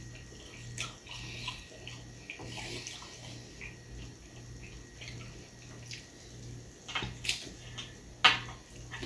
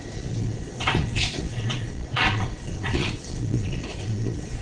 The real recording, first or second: first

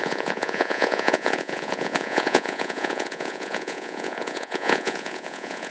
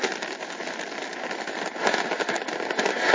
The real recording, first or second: second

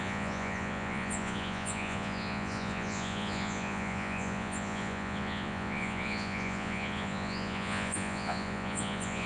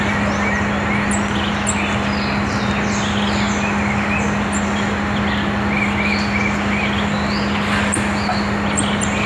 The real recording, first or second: second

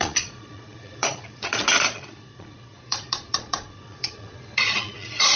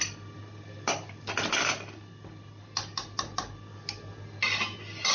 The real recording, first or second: second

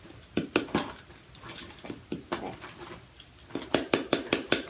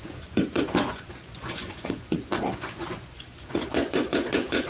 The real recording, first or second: first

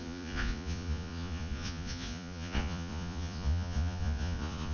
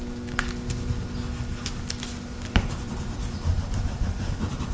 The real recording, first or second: second